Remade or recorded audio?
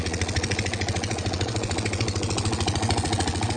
remade